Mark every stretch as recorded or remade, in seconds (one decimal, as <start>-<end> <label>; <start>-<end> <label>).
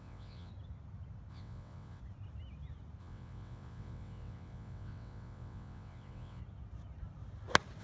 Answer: 0.0-0.5 remade; 0.5-1.3 recorded; 1.3-2.0 remade; 2.0-3.0 recorded; 3.0-6.4 remade; 6.4-7.8 recorded